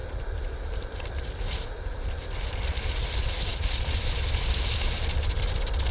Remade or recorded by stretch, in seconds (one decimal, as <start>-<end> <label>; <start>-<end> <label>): 0.0-5.9 recorded

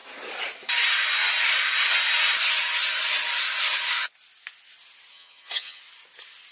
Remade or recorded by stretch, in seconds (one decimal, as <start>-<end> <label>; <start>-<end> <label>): 0.0-5.1 recorded; 5.1-5.8 remade; 5.8-6.5 recorded

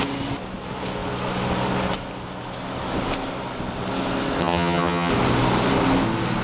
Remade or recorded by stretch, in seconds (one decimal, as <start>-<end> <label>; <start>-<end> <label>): 0.0-4.4 recorded; 4.4-5.1 remade; 5.1-6.4 recorded

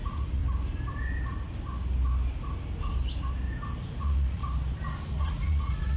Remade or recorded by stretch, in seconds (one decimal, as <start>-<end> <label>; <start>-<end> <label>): 0.0-0.4 remade; 0.4-4.0 recorded; 4.0-4.4 remade; 4.4-5.2 recorded; 5.2-6.0 remade

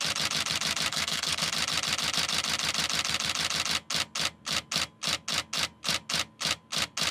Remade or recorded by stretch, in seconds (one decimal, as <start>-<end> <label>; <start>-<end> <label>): 0.0-0.9 recorded; 0.9-1.5 remade; 1.5-7.1 recorded